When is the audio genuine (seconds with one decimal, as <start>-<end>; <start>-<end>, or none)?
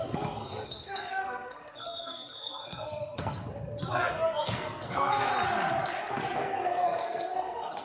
3.4-3.9; 5.3-6.1